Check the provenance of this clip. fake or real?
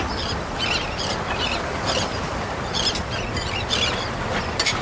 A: fake